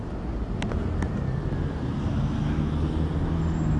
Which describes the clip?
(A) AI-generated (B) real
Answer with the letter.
B